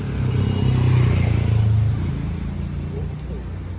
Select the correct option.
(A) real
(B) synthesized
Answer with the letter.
A